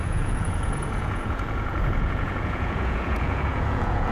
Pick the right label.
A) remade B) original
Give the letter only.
A